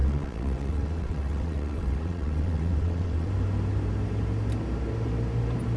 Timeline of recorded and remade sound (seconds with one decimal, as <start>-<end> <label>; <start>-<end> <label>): 0.0-3.3 remade; 3.3-5.8 recorded